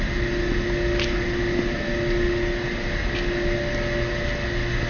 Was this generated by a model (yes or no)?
no